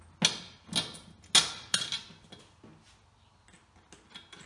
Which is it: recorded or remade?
recorded